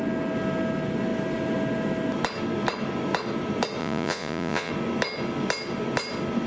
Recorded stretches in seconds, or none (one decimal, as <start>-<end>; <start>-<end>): 0.0-3.8; 4.7-6.5